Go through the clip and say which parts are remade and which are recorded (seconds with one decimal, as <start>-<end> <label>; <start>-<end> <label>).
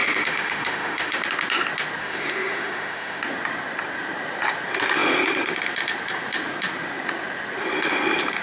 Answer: 0.0-1.2 remade; 1.2-2.0 recorded; 2.0-3.2 remade; 3.2-8.4 recorded